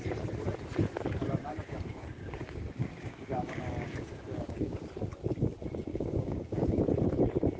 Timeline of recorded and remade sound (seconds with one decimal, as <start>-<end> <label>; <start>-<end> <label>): 0.0-1.5 recorded; 1.5-4.9 remade; 4.9-5.9 recorded; 5.9-6.8 remade; 6.8-7.6 recorded